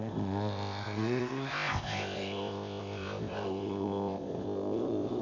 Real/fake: fake